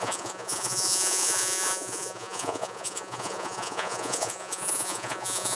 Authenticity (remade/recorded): remade